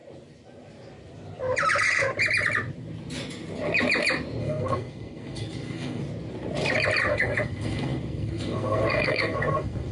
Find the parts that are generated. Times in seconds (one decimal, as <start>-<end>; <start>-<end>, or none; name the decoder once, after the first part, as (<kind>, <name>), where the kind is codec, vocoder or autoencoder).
4.4-6.0 (codec, SNAC); 7.1-9.9